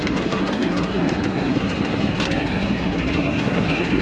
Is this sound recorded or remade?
remade